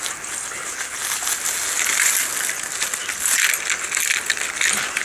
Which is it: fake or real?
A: real